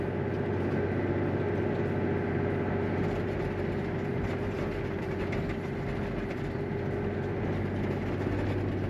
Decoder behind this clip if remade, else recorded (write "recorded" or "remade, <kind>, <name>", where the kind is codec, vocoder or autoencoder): recorded